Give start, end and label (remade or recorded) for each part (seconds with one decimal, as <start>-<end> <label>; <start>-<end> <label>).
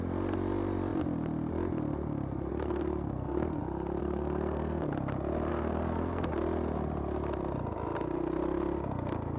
0.0-2.5 recorded; 2.5-3.6 remade; 3.6-4.0 recorded; 4.0-4.9 remade; 4.9-5.5 recorded; 5.5-6.3 remade; 6.3-9.4 recorded